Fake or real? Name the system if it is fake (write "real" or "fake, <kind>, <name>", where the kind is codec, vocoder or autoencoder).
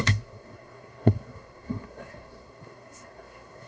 fake, codec, SNAC